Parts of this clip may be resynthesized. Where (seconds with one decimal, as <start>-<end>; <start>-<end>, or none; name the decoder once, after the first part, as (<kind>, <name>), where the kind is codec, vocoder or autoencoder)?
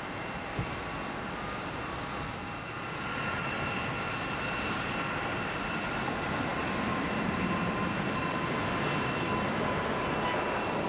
none